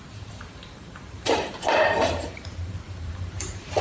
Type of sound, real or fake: fake